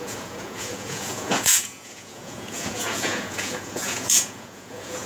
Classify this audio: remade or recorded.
remade